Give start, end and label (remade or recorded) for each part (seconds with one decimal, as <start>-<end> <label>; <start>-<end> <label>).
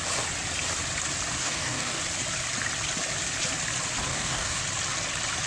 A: 0.0-1.4 recorded; 1.4-2.0 remade; 2.0-4.1 recorded; 4.1-4.6 remade; 4.6-5.5 recorded